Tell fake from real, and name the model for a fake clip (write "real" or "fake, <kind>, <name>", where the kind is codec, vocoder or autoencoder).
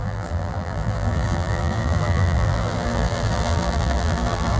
fake, vocoder, BigVGAN v2